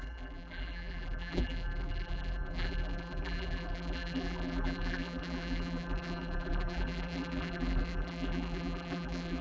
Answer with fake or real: fake